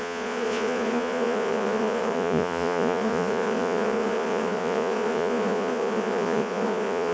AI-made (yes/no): yes